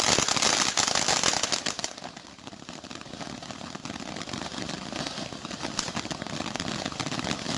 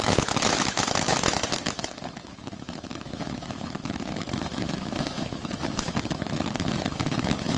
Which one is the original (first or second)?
first